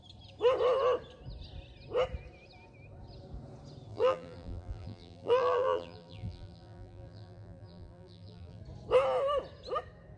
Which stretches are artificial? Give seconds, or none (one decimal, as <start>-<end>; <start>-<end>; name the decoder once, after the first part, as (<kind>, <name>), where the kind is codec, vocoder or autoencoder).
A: 3.9-8.6 (vocoder, BigVGAN v2)